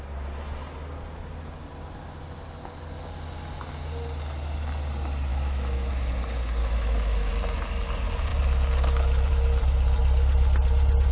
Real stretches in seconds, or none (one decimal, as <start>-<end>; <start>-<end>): 0.0-5.3; 5.9-6.6; 7.3-11.1